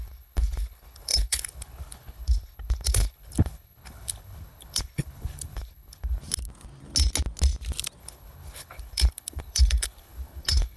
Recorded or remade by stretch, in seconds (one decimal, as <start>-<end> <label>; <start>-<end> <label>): 0.0-6.2 remade; 6.2-8.0 recorded; 8.0-10.8 remade